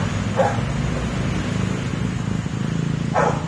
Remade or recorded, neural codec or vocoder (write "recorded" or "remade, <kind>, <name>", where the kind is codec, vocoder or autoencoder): recorded